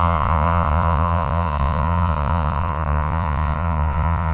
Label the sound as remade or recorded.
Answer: remade